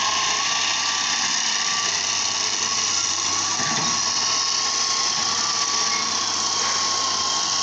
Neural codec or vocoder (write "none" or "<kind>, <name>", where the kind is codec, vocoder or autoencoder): none